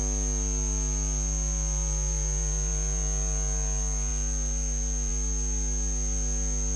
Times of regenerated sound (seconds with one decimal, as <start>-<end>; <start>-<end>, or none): none